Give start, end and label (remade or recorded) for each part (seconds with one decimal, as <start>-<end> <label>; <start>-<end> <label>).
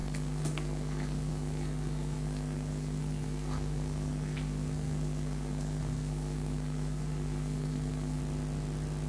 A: 0.0-8.2 remade; 8.2-9.1 recorded